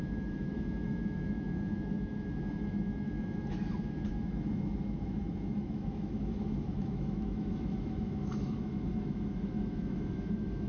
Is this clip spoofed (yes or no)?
yes